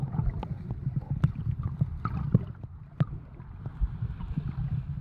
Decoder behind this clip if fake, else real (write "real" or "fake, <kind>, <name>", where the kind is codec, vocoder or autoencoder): real